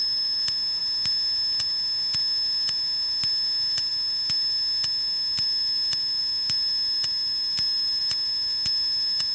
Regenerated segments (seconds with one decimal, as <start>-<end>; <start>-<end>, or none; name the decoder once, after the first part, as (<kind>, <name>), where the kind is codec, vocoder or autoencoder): none